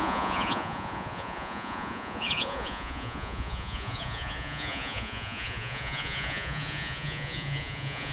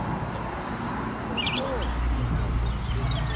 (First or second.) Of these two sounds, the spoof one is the first